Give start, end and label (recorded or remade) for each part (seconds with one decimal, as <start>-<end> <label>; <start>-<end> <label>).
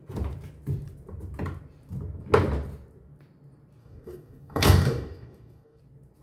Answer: 0.0-3.8 recorded; 3.8-5.8 remade; 5.8-6.2 recorded